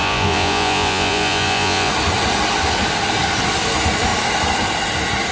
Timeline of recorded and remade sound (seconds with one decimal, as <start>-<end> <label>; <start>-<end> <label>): 0.0-1.9 remade; 1.9-5.3 recorded